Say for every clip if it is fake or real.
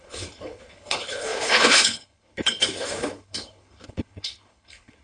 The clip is fake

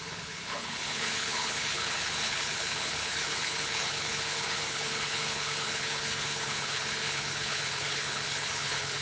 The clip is fake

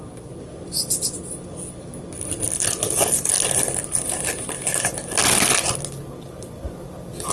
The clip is real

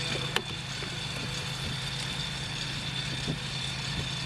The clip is real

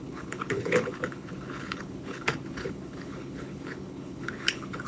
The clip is fake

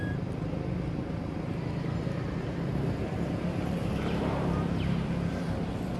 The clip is real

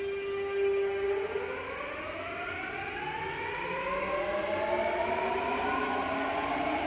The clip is real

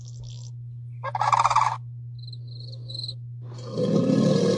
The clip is real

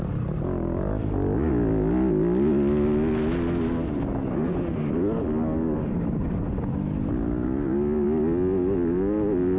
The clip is real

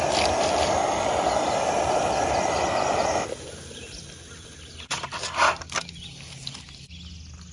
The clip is real